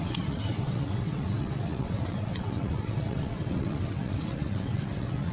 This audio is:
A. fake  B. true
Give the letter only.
A